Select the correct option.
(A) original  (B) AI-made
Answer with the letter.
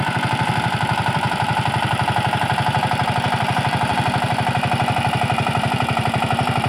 B